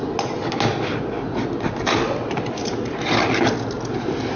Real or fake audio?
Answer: real